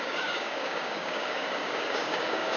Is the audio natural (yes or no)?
no